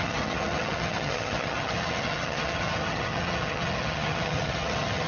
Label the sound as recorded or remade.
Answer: remade